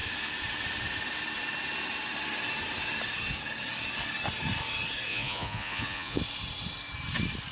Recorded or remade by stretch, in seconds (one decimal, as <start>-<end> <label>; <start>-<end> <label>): 0.0-5.1 recorded; 5.1-6.2 remade; 6.2-7.5 recorded